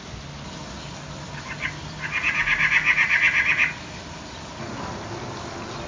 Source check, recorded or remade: recorded